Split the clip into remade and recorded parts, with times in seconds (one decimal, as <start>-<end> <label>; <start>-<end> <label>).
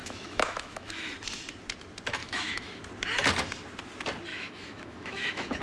0.0-1.1 remade; 1.1-2.2 recorded; 2.2-2.8 remade; 2.8-4.3 recorded; 4.3-5.6 remade